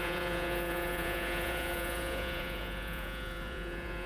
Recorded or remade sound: remade